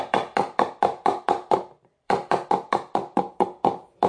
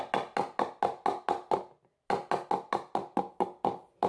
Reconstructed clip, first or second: first